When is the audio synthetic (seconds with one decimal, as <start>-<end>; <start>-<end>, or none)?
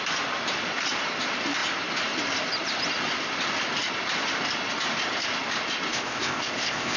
5.9-7.0